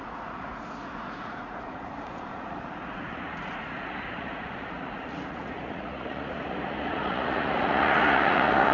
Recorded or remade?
remade